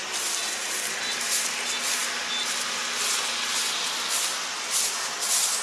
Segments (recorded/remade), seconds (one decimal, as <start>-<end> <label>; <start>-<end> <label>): 0.0-5.6 recorded